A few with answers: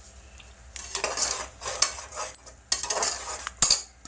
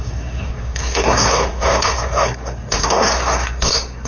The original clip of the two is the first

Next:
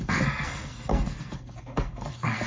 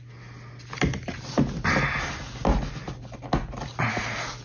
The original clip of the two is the second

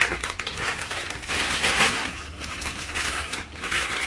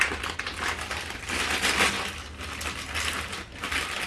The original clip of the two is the second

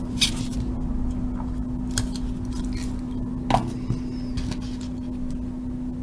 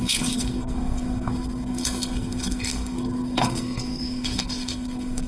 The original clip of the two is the first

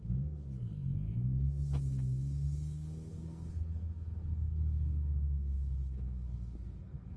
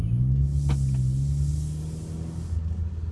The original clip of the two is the second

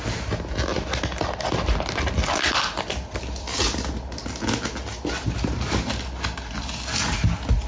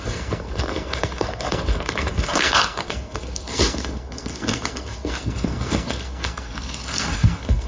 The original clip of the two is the first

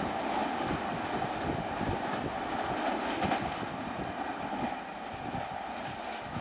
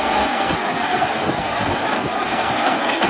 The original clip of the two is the first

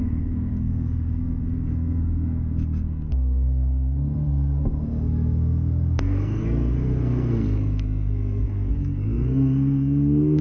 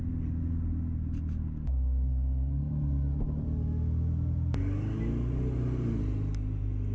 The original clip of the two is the second